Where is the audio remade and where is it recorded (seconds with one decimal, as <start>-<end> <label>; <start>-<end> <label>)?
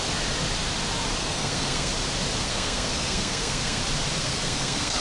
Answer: 0.0-1.2 recorded; 1.2-1.9 remade; 1.9-2.4 recorded; 2.4-3.8 remade; 3.8-4.2 recorded; 4.2-5.0 remade